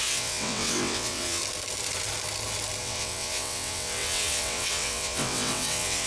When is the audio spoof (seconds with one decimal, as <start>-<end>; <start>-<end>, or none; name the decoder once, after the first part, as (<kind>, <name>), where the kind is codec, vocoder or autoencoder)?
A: 0.0-1.4 (vocoder, WaveNeXt); 2.8-6.1